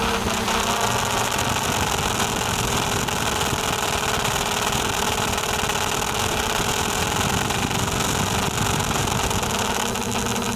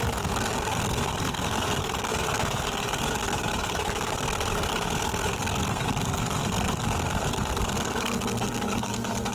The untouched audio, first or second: first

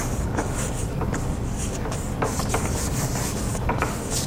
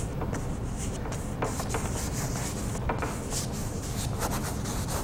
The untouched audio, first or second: second